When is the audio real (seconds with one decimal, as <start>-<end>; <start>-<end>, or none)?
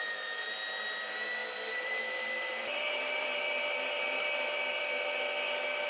0.0-1.4; 4.8-5.9